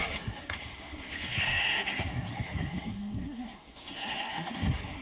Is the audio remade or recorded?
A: remade